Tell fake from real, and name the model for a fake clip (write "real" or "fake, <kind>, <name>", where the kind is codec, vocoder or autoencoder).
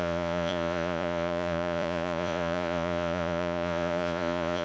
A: fake, vocoder, Vocos